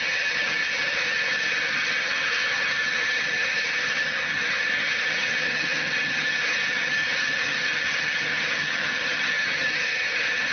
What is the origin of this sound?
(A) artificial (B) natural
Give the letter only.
A